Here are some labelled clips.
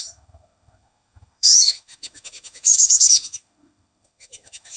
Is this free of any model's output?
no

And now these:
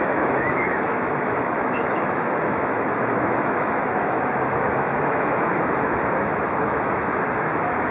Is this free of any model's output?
no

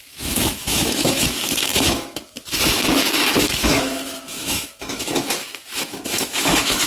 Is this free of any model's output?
no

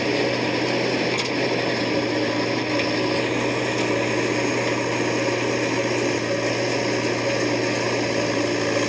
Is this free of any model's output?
yes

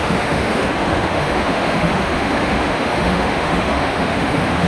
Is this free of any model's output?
no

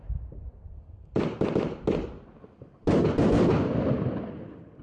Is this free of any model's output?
yes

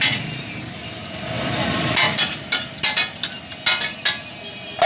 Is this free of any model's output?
yes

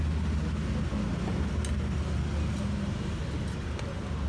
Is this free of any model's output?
yes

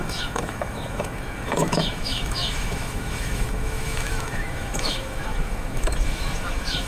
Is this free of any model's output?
no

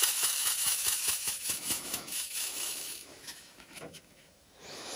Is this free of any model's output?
no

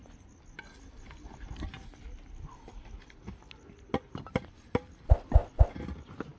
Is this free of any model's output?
yes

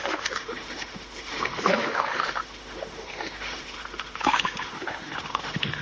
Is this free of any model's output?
no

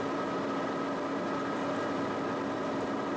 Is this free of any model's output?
yes